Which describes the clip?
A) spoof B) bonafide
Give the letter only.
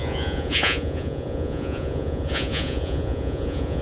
A